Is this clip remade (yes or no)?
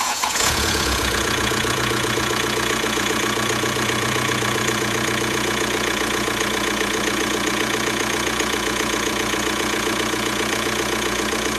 yes